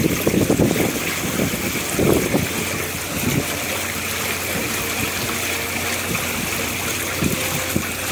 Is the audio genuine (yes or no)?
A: yes